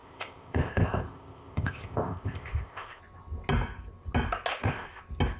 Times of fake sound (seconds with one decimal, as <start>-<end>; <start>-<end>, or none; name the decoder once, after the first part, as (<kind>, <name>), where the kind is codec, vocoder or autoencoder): 0.0-3.0 (codec, ZipCodec); 4.5-5.0